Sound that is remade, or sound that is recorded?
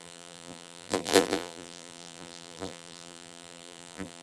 remade